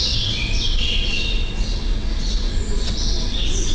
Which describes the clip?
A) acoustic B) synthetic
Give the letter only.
B